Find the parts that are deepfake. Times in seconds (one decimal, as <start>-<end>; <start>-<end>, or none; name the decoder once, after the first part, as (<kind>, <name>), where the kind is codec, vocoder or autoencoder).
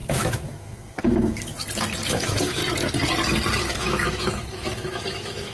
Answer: 0.0-1.5 (autoencoder, DAC-VAE); 2.1-2.6; 3.6-5.5